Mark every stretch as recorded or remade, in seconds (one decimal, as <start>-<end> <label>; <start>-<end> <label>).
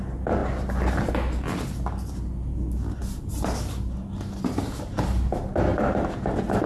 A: 0.0-6.7 recorded